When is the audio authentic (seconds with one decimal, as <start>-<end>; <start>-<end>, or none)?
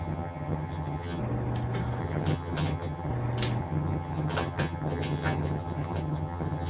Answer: 1.2-2.0; 3.1-3.6